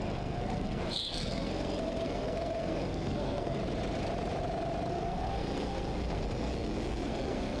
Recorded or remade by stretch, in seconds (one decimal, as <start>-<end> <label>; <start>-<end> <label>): 0.0-3.6 remade; 3.6-4.9 recorded; 4.9-7.6 remade